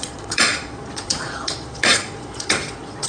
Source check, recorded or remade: remade